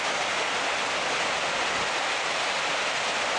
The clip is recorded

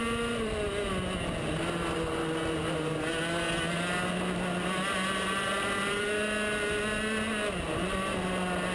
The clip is recorded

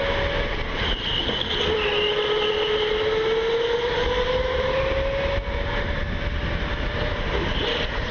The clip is recorded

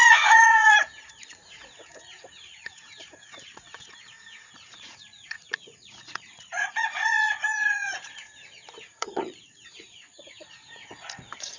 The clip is remade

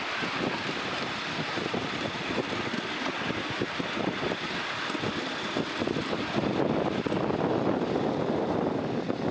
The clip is recorded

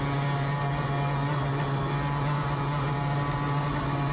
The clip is recorded